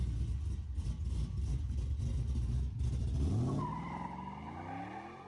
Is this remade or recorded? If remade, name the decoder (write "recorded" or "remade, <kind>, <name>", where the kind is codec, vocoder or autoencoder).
recorded